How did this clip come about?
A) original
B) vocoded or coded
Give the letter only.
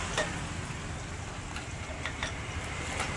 B